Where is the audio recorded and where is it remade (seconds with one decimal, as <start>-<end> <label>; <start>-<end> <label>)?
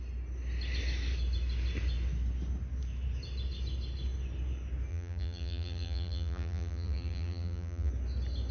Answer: 0.0-4.9 recorded; 4.9-7.9 remade; 7.9-8.5 recorded